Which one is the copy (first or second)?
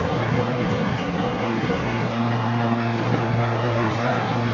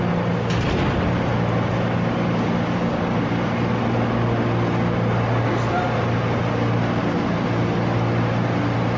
first